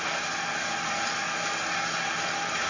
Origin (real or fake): real